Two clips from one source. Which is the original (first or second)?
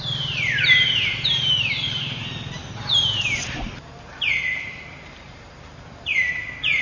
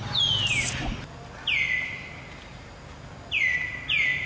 second